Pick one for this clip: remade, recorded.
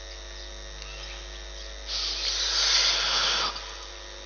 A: recorded